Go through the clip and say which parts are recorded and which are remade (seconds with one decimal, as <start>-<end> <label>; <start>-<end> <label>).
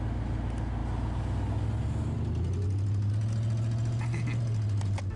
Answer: 0.0-5.2 recorded